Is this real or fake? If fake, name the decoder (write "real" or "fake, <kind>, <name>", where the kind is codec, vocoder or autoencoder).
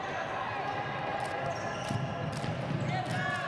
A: real